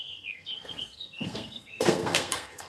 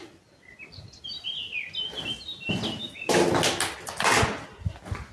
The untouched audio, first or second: second